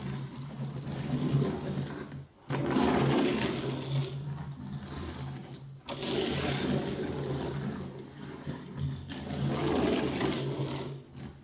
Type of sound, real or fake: real